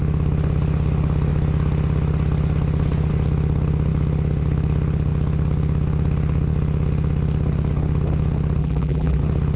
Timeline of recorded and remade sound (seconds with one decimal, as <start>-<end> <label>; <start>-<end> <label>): 0.0-8.6 recorded; 8.6-9.2 remade; 9.2-9.6 recorded